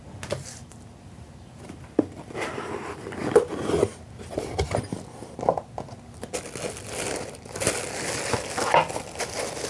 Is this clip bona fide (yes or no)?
yes